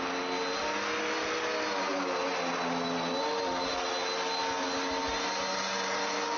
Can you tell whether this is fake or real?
real